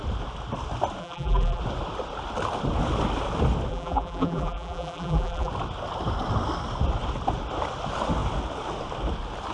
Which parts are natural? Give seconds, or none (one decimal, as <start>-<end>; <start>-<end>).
0.0-1.0; 1.6-3.7; 5.5-9.5